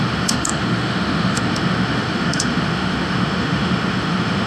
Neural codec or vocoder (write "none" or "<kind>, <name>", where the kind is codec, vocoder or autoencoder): autoencoder, DAC-VAE